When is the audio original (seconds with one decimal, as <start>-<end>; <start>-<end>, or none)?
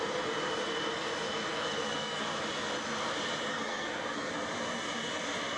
0.0-1.5; 2.2-3.5; 4.3-5.6